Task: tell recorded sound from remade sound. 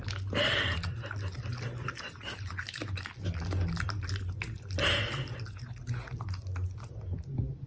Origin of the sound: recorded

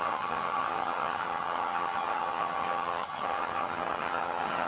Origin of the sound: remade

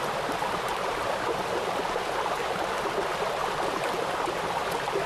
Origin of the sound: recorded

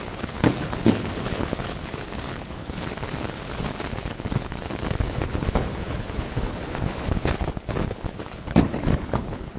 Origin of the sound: remade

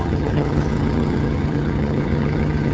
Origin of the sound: remade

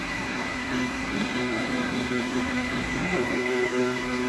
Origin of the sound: remade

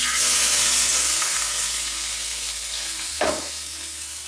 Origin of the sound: remade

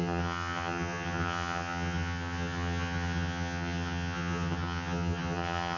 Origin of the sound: remade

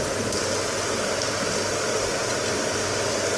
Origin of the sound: recorded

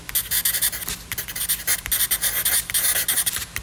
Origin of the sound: recorded